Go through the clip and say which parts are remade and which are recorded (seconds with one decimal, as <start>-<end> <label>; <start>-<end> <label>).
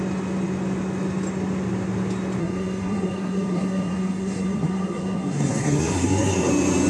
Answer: 0.0-2.4 recorded; 2.4-6.5 remade; 6.5-6.9 recorded